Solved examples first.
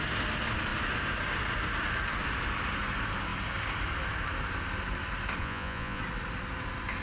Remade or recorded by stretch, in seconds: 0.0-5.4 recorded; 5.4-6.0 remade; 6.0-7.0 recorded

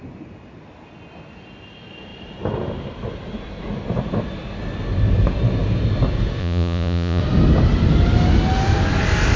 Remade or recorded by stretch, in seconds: 0.0-6.4 recorded; 6.4-7.2 remade; 7.2-9.4 recorded

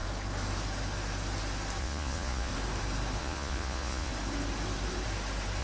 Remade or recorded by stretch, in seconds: 0.0-1.8 recorded; 1.8-2.5 remade; 2.5-3.2 recorded; 3.2-4.1 remade; 4.1-5.6 recorded